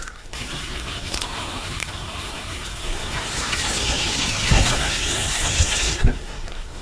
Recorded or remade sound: remade